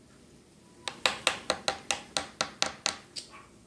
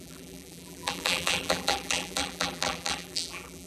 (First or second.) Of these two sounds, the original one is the first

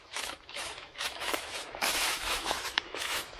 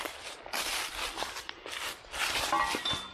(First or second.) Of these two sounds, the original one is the second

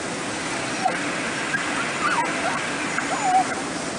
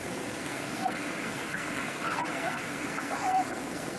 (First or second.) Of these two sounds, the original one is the first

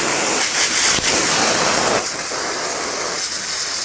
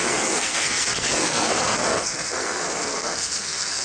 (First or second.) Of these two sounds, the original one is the first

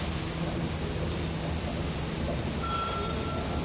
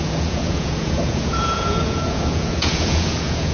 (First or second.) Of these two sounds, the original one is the first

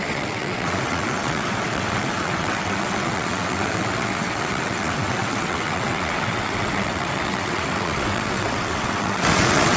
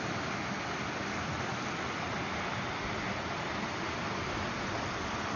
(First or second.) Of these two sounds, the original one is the second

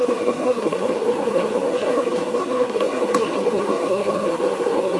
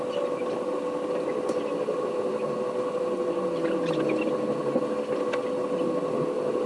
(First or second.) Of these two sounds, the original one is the second